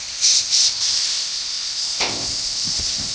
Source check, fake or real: fake